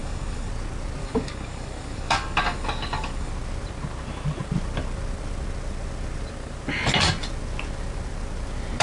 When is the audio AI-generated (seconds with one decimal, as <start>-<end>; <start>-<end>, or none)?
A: 0.0-0.5; 1.0-3.3